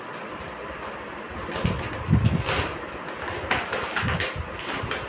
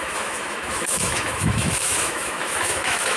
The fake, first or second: second